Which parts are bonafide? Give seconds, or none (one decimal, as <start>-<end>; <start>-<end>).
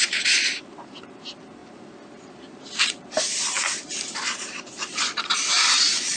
none